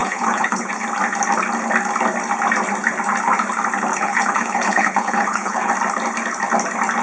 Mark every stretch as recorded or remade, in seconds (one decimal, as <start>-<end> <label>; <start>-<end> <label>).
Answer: 0.0-0.7 remade; 0.7-3.9 recorded; 3.9-5.7 remade; 5.7-7.0 recorded